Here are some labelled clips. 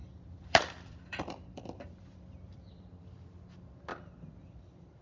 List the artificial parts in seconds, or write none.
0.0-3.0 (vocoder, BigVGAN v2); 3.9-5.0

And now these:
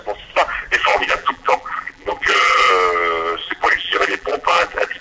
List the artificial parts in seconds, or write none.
0.8-2.7 (vocoder, BigVGAN v2); 3.4-5.0

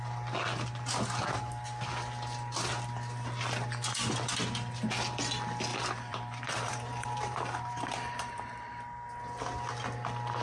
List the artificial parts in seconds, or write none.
5.7-8.8 (vocoder, BigVGAN v2)

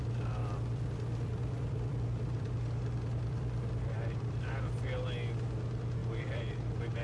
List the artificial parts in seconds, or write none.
0.4-4.6 (vocoder, BigVGAN v2); 6.0-7.0